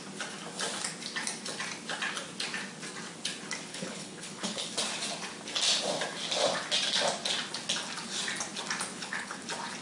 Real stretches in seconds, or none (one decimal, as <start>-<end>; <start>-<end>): 0.0-3.7; 4.7-8.9; 9.4-9.8